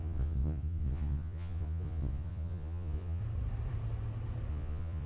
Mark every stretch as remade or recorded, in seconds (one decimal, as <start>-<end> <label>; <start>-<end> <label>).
0.0-3.2 remade; 3.2-4.5 recorded; 4.5-5.1 remade